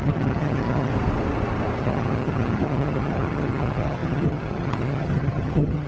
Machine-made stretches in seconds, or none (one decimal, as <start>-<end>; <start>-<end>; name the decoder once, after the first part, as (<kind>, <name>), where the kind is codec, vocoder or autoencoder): 0.0-0.9 (vocoder, HiFi-GAN); 1.8-5.9